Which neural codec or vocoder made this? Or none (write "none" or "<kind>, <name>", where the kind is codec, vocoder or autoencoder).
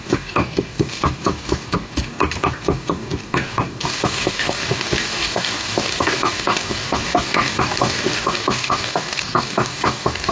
codec, DAC